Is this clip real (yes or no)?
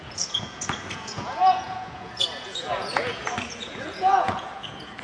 no